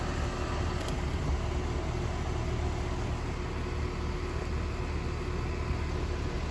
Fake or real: real